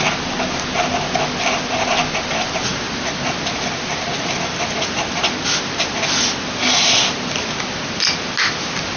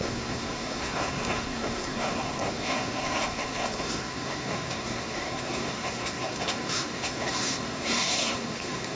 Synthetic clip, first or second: second